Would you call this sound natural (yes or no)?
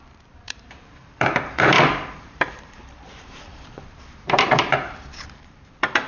no